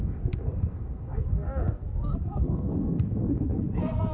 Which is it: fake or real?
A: fake